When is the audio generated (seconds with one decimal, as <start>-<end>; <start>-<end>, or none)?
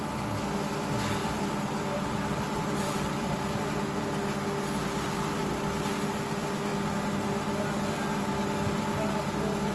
1.2-4.0